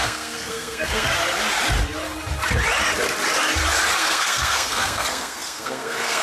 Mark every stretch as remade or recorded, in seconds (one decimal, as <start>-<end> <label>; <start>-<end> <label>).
0.0-1.1 remade; 1.1-4.0 recorded; 4.0-6.2 remade